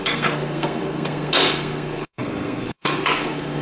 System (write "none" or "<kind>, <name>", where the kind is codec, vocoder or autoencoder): codec, SNAC